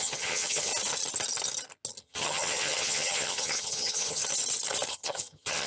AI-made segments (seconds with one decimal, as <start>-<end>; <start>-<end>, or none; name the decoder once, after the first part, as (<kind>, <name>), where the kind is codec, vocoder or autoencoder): 0.0-0.7 (vocoder, HiFi-GAN); 2.0-4.2; 4.9-5.7